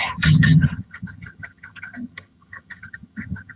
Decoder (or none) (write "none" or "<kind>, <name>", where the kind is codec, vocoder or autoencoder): vocoder, HiFi-GAN